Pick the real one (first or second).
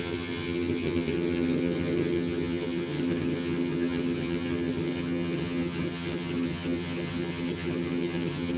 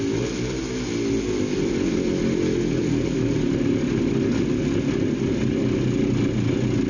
second